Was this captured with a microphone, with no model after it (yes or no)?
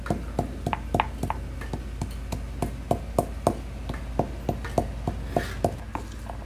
yes